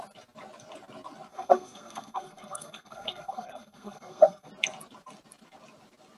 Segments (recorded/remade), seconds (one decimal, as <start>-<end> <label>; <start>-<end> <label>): 0.0-1.3 recorded; 1.3-4.5 remade; 4.5-6.2 recorded